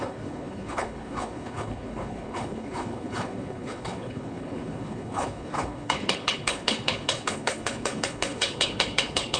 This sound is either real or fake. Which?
fake